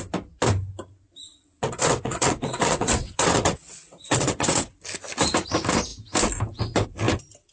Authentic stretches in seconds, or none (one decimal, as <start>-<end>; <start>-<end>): 0.0-1.3; 4.7-7.5

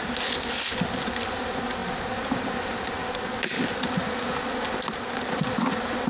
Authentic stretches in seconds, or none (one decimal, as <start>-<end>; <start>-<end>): 0.0-6.1